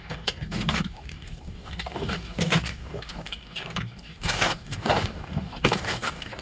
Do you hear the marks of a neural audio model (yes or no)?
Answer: yes